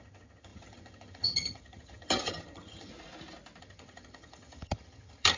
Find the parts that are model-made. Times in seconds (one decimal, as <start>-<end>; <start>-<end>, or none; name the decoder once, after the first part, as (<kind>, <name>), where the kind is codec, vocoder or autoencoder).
0.0-2.9 (vocoder, HiFi-GAN); 3.6-5.4